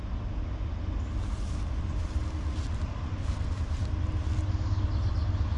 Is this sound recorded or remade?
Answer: recorded